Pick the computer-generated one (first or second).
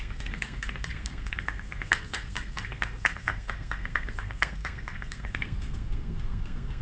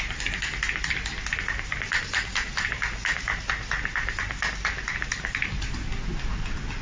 first